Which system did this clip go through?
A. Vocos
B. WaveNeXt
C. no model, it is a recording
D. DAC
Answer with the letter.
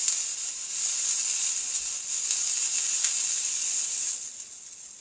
C